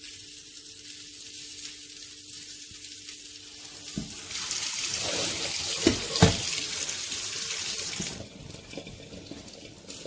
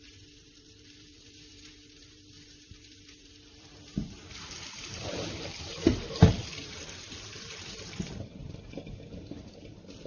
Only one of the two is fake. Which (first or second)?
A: second